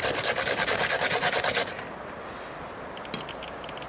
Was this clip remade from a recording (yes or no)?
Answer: no